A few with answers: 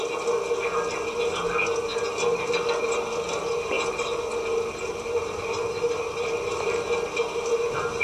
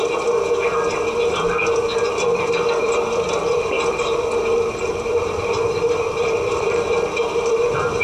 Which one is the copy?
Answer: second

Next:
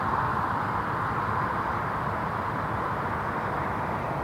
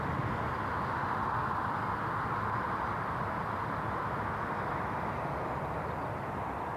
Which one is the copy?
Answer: first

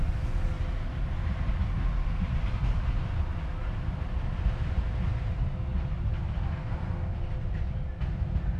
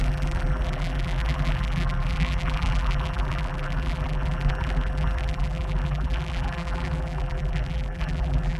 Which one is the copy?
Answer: second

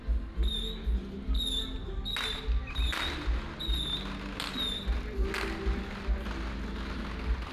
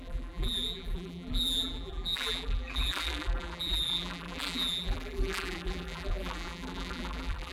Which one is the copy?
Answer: second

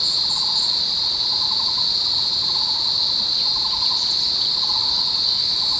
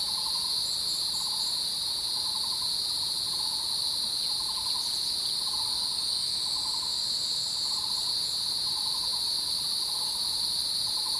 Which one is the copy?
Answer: first